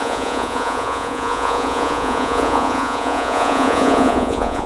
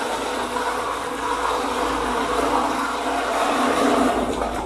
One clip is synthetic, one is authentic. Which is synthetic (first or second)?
first